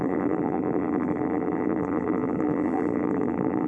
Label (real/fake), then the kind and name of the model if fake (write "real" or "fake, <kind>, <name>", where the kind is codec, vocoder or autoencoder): fake, vocoder, BigVGAN v2